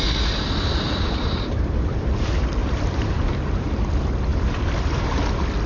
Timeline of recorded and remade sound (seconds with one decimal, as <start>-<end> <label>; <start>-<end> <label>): 0.0-0.7 recorded; 0.7-2.1 remade; 2.1-2.6 recorded; 2.6-3.3 remade; 3.3-5.7 recorded